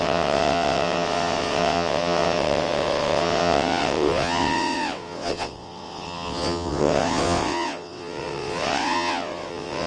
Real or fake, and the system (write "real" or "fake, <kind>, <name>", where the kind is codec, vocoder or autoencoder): fake, vocoder, WaveNeXt